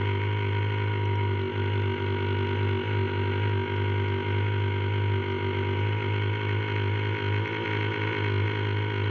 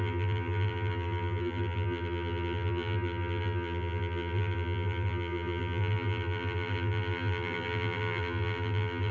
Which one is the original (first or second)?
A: first